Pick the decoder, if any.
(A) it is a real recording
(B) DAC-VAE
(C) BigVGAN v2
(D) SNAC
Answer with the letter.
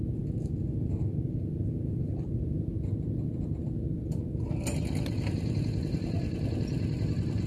A